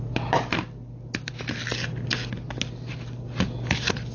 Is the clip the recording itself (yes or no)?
yes